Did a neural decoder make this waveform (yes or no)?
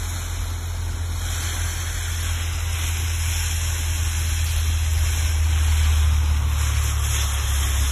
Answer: no